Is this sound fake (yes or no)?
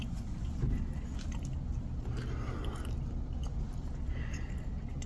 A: no